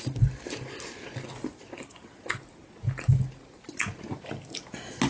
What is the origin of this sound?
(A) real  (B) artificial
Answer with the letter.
A